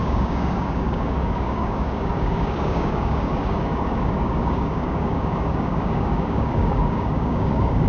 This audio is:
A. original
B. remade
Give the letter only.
B